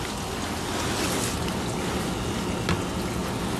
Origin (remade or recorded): recorded